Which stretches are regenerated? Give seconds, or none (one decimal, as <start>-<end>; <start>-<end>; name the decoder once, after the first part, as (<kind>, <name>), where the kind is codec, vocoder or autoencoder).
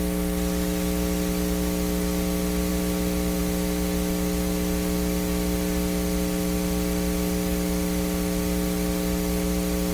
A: none